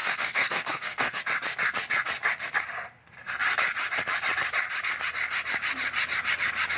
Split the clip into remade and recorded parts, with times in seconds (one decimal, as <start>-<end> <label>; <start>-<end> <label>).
0.0-1.2 remade; 1.2-6.8 recorded